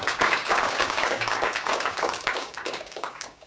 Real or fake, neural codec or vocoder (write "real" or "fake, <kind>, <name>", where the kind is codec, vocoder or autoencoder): fake, codec, DAC